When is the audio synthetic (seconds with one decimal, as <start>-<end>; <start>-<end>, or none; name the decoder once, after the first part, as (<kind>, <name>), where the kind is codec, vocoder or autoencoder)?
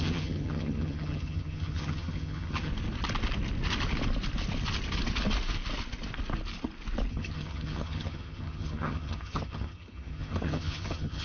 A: 0.0-2.7 (vocoder, HiFi-GAN); 7.1-11.2